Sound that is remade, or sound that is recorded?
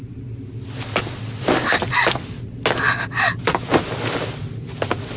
recorded